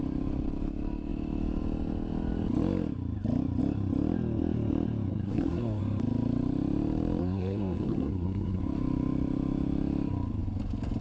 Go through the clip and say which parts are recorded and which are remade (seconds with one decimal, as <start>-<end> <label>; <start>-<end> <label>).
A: 0.0-5.1 recorded; 5.1-5.8 remade; 5.8-7.2 recorded; 7.2-8.6 remade; 8.6-11.0 recorded